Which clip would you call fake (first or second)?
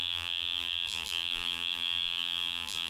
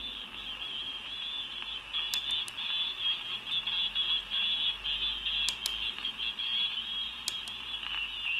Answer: first